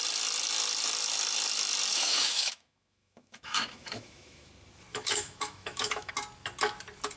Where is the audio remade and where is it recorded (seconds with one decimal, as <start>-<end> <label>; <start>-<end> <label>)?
0.0-1.9 recorded; 1.9-4.5 remade; 4.5-4.9 recorded; 4.9-6.1 remade; 6.1-7.2 recorded